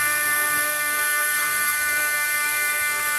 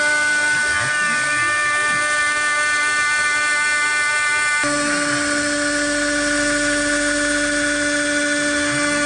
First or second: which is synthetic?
first